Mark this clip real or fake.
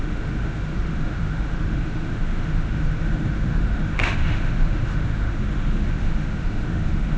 fake